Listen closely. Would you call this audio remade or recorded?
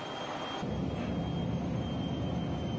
recorded